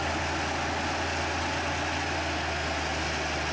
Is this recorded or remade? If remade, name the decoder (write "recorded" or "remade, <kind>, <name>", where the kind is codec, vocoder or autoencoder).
recorded